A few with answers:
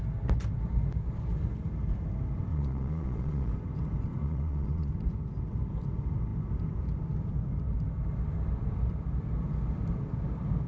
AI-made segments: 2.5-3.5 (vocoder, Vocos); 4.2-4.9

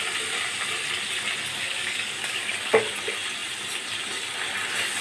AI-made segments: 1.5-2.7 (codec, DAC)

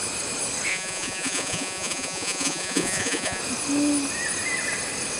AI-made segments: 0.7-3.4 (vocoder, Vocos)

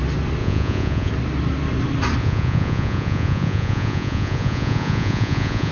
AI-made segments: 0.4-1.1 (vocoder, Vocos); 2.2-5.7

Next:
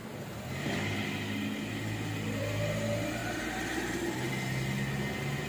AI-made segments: 3.2-4.3 (vocoder, BigVGAN v2)